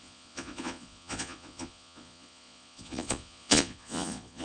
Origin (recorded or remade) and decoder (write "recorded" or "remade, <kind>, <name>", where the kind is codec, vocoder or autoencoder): remade, vocoder, Vocos